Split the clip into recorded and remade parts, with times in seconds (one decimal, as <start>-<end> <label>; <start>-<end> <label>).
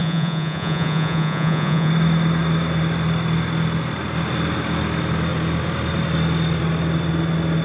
0.0-1.9 remade; 1.9-7.6 recorded